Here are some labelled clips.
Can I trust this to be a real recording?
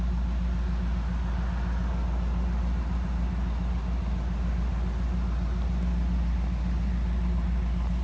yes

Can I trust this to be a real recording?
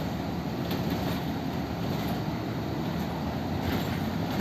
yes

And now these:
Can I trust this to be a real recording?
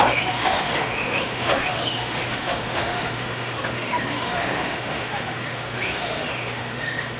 no